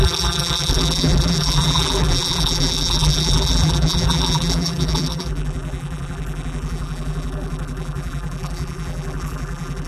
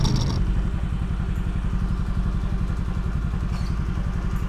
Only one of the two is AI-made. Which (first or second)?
first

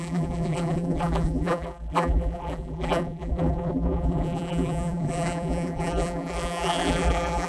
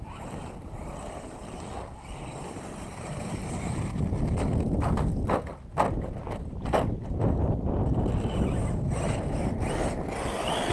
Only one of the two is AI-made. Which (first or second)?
first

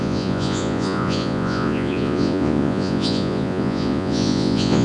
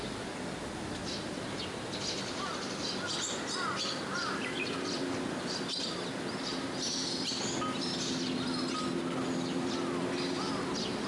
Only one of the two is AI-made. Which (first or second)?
first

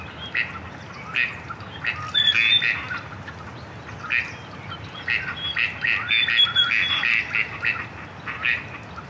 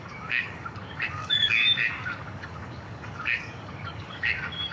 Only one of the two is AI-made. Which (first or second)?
second